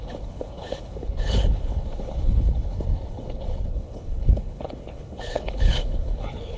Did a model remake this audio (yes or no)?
yes